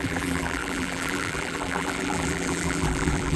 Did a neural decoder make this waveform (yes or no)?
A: yes